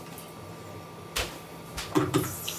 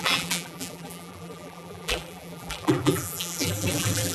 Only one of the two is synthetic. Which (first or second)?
second